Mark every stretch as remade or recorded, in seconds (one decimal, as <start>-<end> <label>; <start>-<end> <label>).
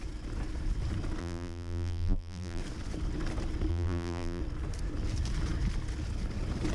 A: 0.0-1.2 recorded; 1.2-2.6 remade; 2.6-3.7 recorded; 3.7-4.4 remade; 4.4-6.7 recorded